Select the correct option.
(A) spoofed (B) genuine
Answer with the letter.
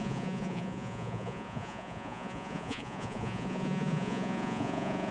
A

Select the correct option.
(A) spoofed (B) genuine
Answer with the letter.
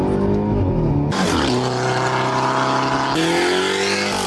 B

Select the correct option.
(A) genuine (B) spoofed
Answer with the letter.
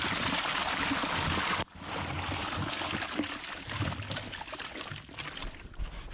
A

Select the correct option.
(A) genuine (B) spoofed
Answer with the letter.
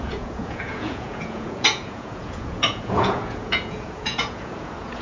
B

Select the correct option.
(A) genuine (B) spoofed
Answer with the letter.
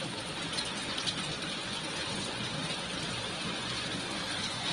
B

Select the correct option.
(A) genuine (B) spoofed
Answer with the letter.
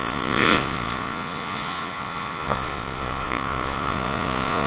B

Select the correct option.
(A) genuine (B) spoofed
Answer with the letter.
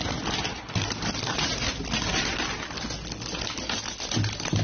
A